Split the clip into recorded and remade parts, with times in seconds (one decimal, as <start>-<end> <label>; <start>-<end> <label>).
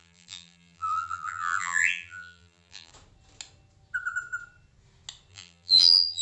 0.0-2.9 remade; 2.9-5.3 recorded; 5.3-6.2 remade